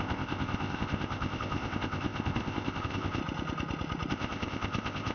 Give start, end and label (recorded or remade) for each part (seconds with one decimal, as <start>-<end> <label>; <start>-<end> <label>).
0.0-3.2 remade; 3.2-4.1 recorded; 4.1-5.1 remade